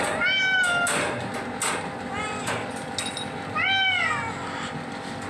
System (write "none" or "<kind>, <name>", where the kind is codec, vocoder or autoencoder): none